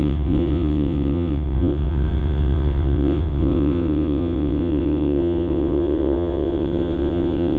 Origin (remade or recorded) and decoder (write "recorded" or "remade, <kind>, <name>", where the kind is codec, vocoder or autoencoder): remade, vocoder, WaveNeXt